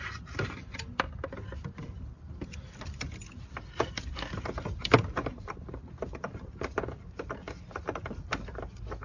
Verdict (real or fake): real